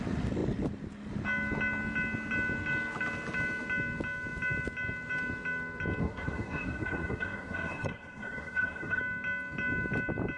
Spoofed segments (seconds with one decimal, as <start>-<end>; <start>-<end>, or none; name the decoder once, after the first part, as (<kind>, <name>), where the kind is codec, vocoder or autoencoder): 6.0-9.0 (codec, SNAC)